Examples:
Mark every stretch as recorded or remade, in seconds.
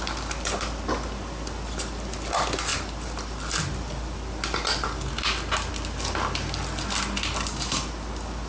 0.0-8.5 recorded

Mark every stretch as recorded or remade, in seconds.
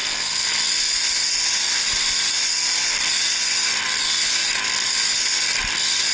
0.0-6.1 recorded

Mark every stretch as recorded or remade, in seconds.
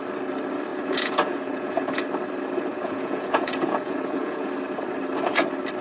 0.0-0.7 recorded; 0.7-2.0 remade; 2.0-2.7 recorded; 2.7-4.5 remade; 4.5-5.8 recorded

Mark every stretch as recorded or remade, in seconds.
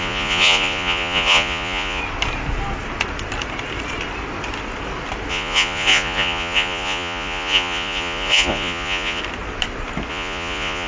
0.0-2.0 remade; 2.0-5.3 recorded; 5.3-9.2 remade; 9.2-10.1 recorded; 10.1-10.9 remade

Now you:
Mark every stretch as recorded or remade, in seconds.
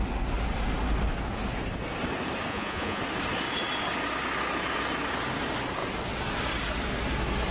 0.0-2.5 recorded; 2.5-3.0 remade; 3.0-7.5 recorded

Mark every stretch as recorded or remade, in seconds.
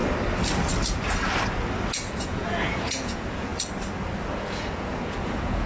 0.0-1.9 recorded; 1.9-3.5 remade; 3.5-4.3 recorded; 4.3-5.7 remade